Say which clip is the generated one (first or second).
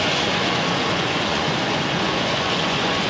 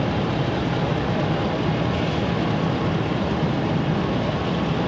first